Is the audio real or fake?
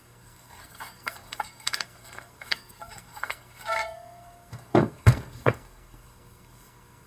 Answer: fake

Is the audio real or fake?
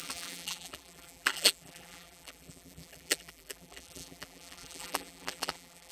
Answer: fake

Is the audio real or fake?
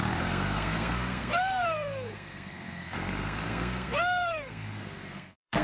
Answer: fake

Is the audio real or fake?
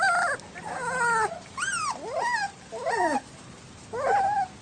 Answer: real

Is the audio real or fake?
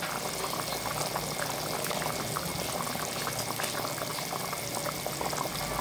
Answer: real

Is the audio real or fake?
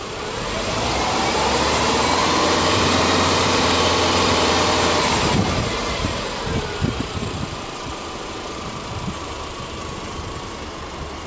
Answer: fake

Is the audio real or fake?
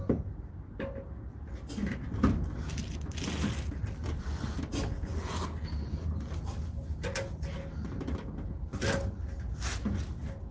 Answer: real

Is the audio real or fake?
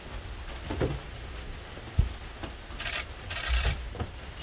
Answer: fake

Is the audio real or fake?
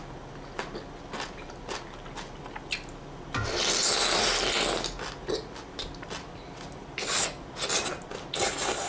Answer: real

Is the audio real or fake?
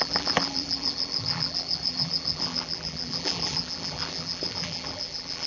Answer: fake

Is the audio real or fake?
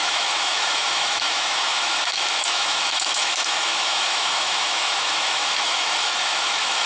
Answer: fake